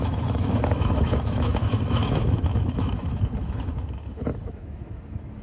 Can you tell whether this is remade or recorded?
remade